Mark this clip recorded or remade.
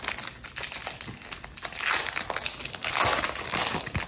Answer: recorded